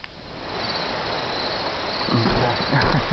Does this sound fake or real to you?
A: real